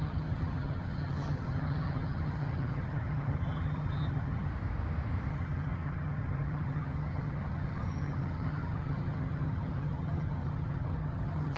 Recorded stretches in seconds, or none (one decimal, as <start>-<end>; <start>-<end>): 4.5-5.3